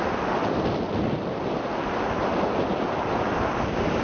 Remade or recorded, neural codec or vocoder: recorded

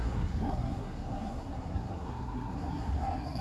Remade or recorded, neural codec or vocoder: remade, codec, SNAC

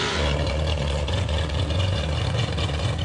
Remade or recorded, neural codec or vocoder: remade, vocoder, Vocos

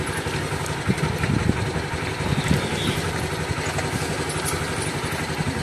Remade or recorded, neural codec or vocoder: recorded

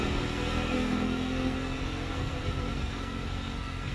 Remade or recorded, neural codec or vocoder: remade, codec, SNAC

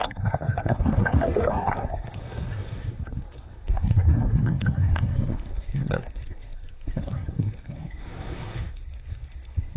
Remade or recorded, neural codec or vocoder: remade, codec, SNAC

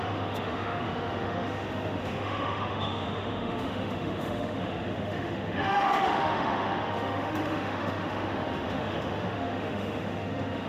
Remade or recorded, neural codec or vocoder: remade, autoencoder, DAC-VAE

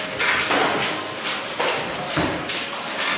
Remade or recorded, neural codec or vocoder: recorded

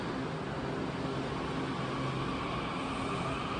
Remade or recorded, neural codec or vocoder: recorded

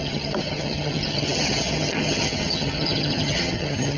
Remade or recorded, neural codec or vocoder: remade, vocoder, HiFi-GAN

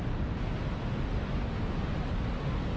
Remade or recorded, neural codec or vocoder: recorded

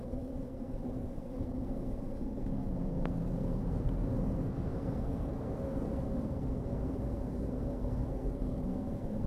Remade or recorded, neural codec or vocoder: remade, codec, SNAC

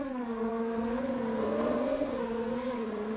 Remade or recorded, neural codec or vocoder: remade, codec, SNAC